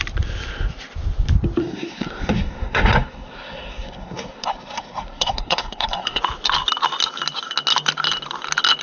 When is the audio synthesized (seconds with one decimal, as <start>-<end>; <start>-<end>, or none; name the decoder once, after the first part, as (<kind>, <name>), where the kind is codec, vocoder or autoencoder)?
1.6-6.2 (codec, SNAC)

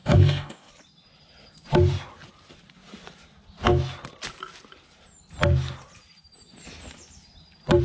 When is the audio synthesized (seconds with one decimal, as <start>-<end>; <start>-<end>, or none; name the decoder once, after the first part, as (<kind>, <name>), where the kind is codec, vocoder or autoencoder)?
0.0-0.7 (codec, DAC)

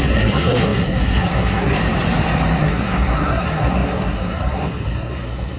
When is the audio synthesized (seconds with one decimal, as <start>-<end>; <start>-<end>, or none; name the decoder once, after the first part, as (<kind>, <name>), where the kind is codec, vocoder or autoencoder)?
0.0-1.8 (codec, SNAC); 2.6-5.6

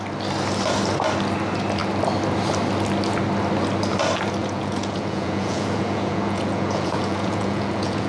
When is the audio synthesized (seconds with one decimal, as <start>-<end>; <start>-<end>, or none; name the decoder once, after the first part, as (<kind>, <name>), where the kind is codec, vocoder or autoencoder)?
4.4-8.1 (vocoder, Vocos)

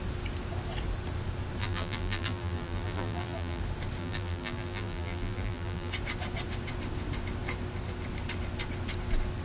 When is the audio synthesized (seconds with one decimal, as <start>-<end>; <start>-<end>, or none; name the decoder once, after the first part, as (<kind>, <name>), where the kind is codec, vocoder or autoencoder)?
1.6-3.6 (vocoder, BigVGAN v2); 4.0-5.9

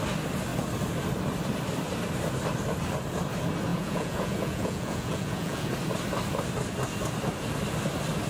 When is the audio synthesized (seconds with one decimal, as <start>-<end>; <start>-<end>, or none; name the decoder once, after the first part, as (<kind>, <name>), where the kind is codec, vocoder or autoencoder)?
3.7-5.7 (vocoder, Vocos)

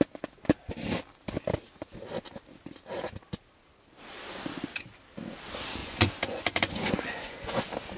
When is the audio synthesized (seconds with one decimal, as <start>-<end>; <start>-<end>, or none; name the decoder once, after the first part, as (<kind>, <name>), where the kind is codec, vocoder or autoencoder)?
5.8-7.6 (vocoder, Vocos)

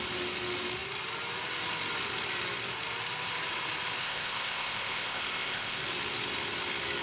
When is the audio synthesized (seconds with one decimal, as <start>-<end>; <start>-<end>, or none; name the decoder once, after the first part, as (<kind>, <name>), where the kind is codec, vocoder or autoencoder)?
4.0-5.8 (codec, ZipCodec)